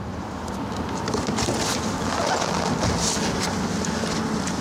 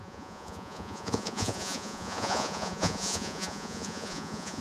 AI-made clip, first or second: second